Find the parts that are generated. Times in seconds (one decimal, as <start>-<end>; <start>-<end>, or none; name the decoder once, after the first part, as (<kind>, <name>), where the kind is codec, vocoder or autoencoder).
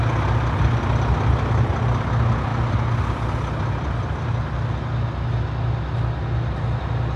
none